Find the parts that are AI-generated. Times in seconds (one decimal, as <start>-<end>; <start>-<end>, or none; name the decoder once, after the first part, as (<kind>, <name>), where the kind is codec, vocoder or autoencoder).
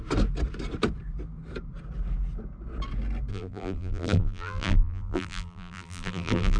3.3-6.6 (vocoder, BigVGAN v2)